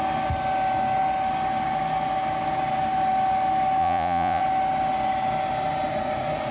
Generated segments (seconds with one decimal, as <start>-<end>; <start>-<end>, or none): 3.8-4.4